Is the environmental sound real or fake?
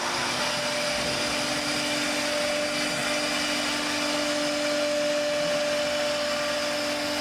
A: real